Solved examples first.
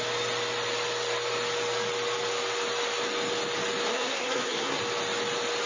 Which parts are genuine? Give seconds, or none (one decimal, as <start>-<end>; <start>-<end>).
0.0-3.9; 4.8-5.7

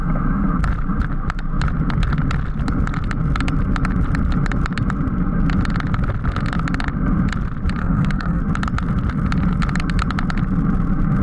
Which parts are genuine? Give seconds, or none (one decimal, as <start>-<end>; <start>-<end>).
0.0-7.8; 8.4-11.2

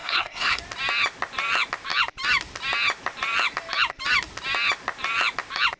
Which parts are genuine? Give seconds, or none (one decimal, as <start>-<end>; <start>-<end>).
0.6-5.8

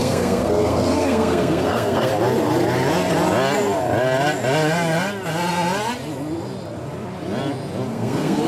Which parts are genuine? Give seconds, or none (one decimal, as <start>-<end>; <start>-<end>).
2.1-7.9

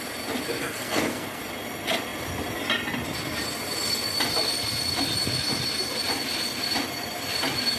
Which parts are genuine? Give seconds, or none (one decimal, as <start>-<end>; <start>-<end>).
0.0-0.6; 1.4-7.8

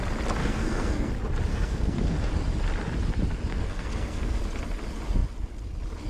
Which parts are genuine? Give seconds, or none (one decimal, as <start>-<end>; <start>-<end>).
0.0-0.4; 1.1-1.5; 2.3-3.5; 4.4-6.1